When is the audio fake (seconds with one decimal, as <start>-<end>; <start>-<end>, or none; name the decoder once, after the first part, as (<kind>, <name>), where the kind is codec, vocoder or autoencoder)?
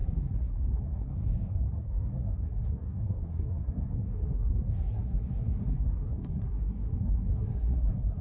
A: 0.0-8.2 (codec, SNAC)